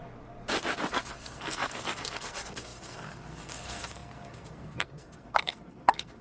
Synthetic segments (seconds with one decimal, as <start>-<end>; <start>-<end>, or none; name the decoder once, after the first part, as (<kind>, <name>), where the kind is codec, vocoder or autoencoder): 0.9-6.2 (codec, SNAC)